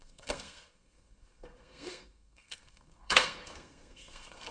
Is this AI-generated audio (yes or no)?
yes